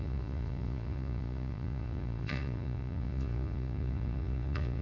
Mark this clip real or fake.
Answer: fake